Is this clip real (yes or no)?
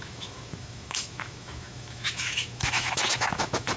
no